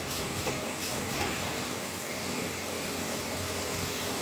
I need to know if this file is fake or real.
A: fake